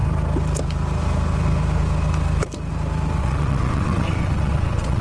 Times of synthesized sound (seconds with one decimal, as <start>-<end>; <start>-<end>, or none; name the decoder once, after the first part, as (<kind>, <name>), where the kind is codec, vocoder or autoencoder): 3.2-5.0 (vocoder, WaveNeXt)